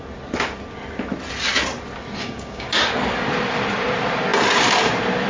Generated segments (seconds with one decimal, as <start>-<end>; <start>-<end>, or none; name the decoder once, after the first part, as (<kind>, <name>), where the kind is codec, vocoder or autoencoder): 2.2-2.8 (codec, DAC)